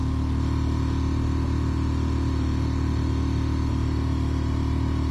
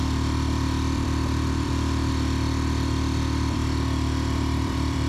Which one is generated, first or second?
second